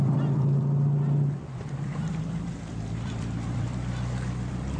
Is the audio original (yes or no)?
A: no